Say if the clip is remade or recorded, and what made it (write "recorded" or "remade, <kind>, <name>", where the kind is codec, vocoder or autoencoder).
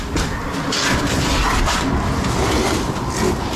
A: recorded